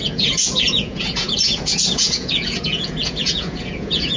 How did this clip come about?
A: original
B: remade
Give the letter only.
B